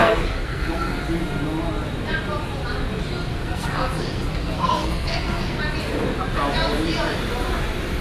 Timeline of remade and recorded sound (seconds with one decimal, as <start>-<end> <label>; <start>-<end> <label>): 0.0-1.0 remade; 1.0-3.3 recorded; 3.3-5.6 remade; 5.6-8.0 recorded